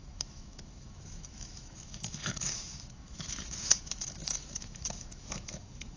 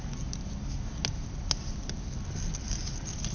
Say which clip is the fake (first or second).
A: first